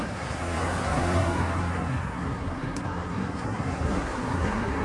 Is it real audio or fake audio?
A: fake